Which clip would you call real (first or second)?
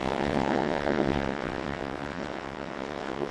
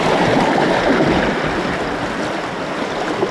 second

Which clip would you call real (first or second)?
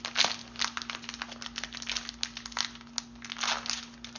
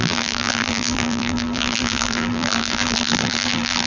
first